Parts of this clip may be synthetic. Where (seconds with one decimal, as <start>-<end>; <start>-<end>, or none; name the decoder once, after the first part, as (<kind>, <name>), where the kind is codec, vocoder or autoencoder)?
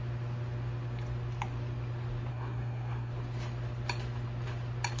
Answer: 2.3-3.1 (codec, SNAC)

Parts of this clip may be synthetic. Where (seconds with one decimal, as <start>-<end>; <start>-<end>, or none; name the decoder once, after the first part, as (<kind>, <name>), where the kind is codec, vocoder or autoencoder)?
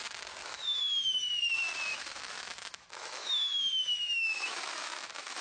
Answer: 0.4-1.4 (autoencoder, DAC-VAE); 1.9-5.4